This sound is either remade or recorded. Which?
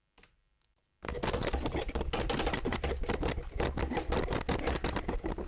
recorded